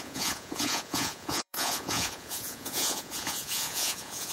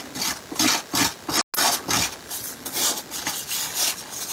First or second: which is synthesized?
first